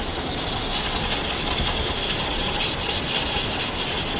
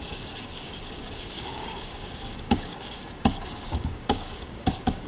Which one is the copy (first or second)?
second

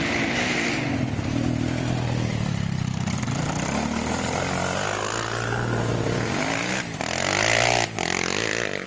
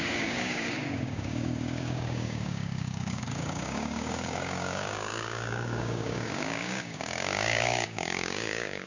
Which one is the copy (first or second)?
second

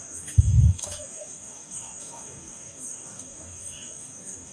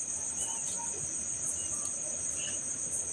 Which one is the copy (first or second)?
first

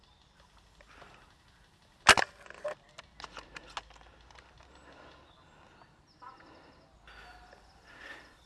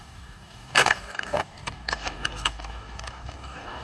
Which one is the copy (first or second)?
second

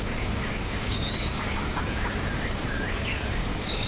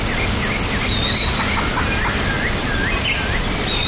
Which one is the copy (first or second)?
first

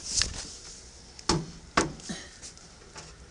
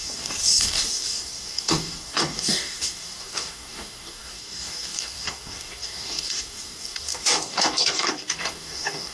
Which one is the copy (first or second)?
second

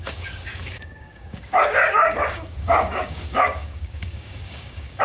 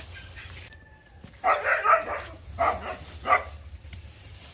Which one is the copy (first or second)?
first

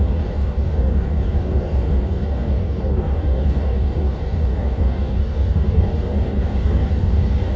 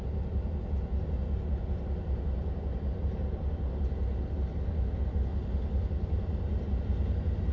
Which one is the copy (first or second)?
first